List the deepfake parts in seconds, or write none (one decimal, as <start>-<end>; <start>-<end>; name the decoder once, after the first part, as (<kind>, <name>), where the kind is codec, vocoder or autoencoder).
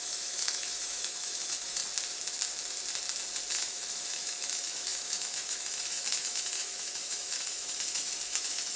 0.0-1.8 (autoencoder, DAC-VAE); 3.5-8.8